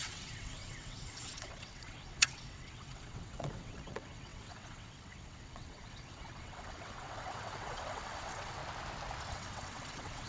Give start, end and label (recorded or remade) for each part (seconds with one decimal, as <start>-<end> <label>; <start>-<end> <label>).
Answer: 0.0-8.6 remade; 8.6-9.3 recorded; 9.3-10.3 remade